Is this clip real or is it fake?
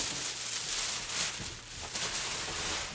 real